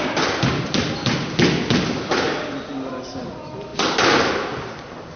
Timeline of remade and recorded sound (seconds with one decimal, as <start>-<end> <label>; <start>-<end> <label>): 0.0-5.2 recorded